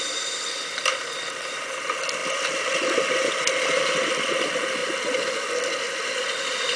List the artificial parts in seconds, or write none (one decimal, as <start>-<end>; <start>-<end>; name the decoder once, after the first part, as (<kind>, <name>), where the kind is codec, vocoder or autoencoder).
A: 0.0-4.8 (vocoder, BigVGAN v2); 5.3-6.8